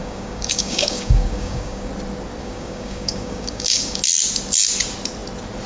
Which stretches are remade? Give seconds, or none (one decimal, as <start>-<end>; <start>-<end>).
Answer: 0.0-1.9; 2.4-4.0